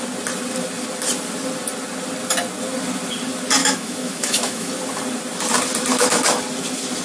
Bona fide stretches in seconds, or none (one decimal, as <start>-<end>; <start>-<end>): 0.0-3.6; 4.7-5.9; 6.4-7.0